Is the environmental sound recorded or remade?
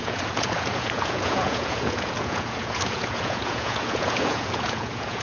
remade